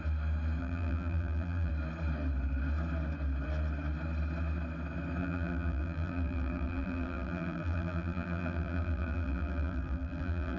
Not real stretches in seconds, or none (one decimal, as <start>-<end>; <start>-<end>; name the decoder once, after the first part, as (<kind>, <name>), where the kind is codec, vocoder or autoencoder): 0.6-1.7 (vocoder, BigVGAN v2); 5.2-10.6